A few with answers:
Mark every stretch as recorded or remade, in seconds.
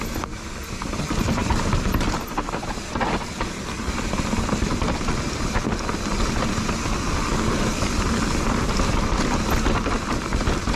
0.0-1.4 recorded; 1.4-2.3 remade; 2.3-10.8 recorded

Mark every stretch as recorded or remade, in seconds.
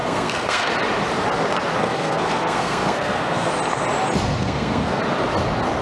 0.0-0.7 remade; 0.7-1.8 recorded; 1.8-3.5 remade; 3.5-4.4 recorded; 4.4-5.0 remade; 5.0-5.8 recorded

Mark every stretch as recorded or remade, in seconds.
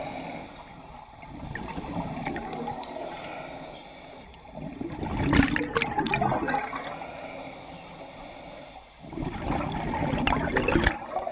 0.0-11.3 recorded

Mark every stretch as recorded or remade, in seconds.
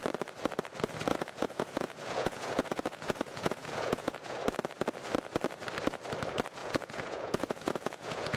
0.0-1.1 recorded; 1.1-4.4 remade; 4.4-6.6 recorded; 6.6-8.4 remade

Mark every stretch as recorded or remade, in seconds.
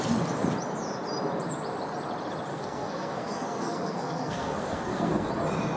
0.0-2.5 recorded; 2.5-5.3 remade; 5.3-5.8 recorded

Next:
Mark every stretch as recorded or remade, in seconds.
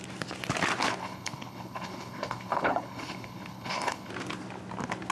0.0-1.0 recorded; 1.0-4.1 remade; 4.1-5.1 recorded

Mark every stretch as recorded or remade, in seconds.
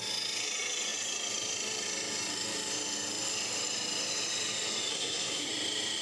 0.0-4.9 recorded; 4.9-5.5 remade; 5.5-6.0 recorded